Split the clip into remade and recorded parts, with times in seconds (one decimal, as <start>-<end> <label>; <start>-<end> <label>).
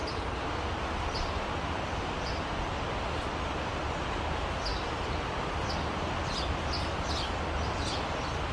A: 0.0-0.7 remade; 0.7-4.7 recorded; 4.7-5.7 remade; 5.7-8.5 recorded